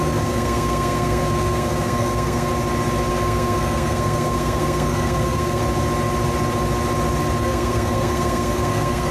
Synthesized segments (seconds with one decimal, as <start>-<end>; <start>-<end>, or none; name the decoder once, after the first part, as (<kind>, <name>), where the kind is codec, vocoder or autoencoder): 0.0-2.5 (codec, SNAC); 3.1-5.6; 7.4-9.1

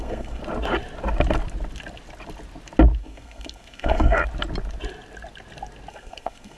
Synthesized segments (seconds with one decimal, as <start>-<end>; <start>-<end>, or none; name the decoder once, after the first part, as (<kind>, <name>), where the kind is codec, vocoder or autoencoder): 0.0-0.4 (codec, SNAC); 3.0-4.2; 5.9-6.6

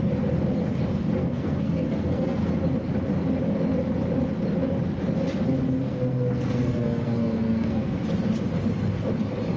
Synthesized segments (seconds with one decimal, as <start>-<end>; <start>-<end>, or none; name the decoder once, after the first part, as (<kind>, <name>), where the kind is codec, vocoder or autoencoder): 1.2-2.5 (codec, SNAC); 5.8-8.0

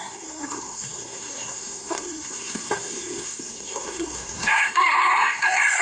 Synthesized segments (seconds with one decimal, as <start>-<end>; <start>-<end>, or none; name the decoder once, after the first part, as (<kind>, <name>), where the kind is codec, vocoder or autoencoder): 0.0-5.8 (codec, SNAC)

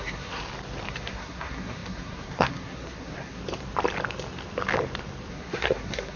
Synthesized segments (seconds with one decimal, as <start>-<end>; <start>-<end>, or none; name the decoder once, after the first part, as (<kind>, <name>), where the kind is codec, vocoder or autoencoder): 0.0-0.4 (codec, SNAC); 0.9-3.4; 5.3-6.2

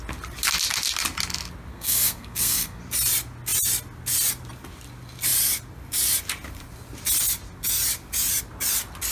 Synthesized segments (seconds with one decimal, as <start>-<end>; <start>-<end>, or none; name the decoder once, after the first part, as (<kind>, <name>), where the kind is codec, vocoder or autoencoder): 1.7-2.8 (codec, SNAC)

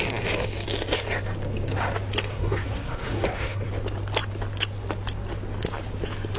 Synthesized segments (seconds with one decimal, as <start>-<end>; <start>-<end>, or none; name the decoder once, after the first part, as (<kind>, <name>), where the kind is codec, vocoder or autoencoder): 2.3-3.7 (codec, SNAC)